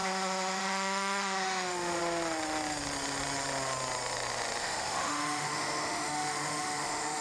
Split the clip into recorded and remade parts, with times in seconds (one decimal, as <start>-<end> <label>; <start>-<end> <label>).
0.0-2.0 remade; 2.0-4.6 recorded; 4.6-7.2 remade